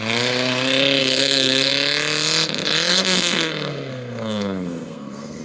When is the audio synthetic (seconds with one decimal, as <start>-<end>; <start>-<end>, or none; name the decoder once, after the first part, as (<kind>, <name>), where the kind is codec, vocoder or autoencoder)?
1.0-1.7 (codec, SNAC); 2.9-5.4